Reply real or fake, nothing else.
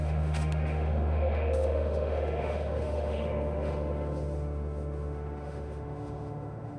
fake